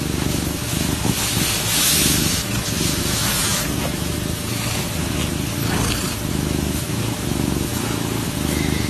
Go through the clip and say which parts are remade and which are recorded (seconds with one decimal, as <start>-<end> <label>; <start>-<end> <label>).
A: 0.0-5.2 remade; 5.2-6.3 recorded; 6.3-8.9 remade